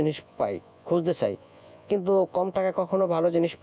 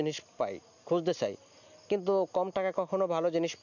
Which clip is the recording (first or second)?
second